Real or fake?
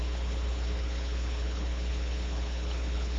fake